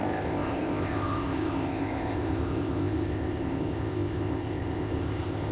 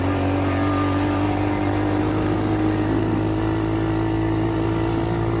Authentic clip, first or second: second